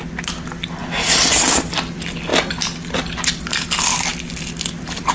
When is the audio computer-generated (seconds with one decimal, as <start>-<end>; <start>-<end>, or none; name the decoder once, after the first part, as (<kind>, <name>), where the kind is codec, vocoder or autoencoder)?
3.9-5.1 (vocoder, BigVGAN v2)